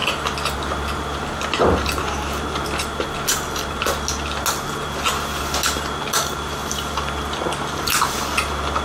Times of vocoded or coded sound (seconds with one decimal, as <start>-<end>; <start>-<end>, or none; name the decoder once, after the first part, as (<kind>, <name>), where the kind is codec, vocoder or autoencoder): none